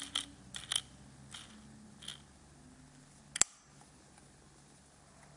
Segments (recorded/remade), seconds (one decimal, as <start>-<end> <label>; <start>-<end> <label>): 0.0-5.4 recorded